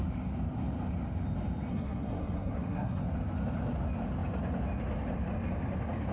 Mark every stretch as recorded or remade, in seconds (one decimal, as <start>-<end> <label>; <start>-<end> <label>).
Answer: 0.0-1.7 recorded; 1.7-3.0 remade; 3.0-6.1 recorded